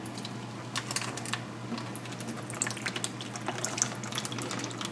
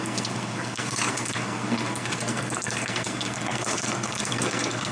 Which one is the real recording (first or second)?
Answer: first